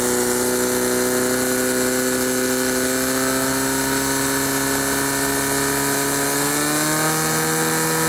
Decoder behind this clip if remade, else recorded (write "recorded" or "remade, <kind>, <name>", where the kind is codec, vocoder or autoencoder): recorded